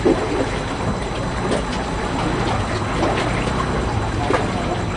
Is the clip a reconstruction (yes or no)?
no